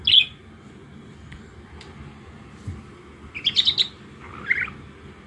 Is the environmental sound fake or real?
real